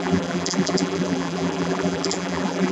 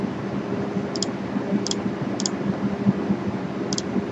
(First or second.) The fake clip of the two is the first